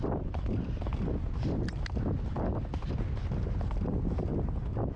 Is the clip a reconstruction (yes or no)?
no